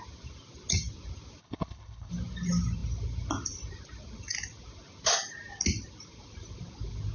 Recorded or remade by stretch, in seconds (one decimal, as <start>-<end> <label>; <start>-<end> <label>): 0.0-1.4 recorded; 1.4-2.1 remade; 2.1-7.1 recorded